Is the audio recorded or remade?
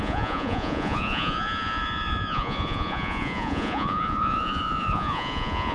remade